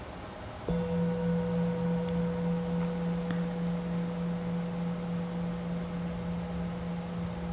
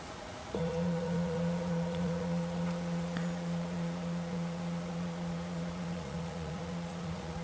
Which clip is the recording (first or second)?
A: first